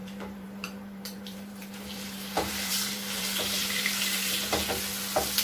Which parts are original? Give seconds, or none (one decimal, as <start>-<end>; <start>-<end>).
4.6-5.4